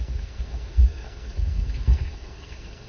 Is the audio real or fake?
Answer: fake